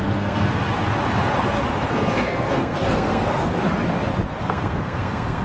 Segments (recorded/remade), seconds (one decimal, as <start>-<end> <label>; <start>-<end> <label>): 0.0-0.5 remade; 0.5-1.9 recorded; 1.9-3.7 remade; 3.7-4.4 recorded; 4.4-5.4 remade